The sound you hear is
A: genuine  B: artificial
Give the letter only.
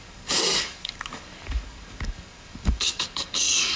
B